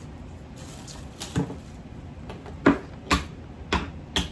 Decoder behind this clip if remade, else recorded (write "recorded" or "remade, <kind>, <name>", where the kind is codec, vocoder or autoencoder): recorded